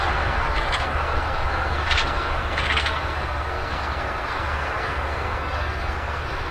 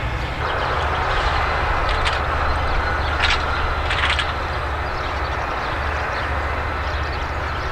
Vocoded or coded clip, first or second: first